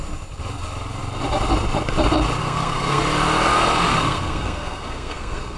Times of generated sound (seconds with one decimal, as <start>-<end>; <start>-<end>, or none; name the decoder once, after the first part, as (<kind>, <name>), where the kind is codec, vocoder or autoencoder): 2.4-3.0 (codec, SNAC); 3.9-5.6